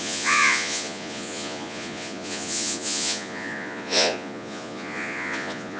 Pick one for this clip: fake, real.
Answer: fake